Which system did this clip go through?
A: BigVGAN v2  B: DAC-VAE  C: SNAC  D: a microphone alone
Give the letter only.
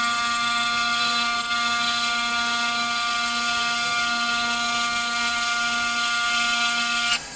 C